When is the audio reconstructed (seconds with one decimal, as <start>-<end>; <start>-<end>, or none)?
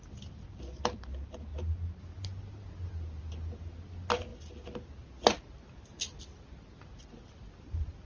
none